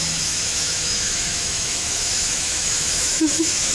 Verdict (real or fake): fake